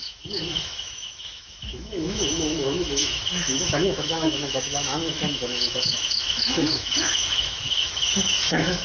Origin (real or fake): fake